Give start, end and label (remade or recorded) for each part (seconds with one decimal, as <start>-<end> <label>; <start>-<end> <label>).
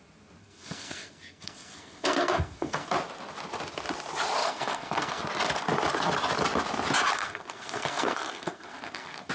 0.0-0.4 recorded; 0.4-2.9 remade; 2.9-4.4 recorded; 4.4-5.2 remade; 5.2-7.1 recorded; 7.1-9.3 remade